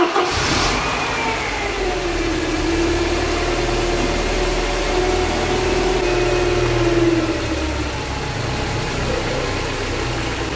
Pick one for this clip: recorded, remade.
recorded